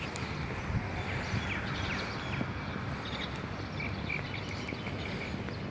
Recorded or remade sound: recorded